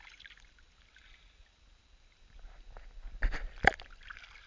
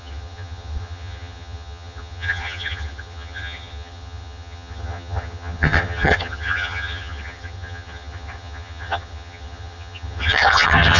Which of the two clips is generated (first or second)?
second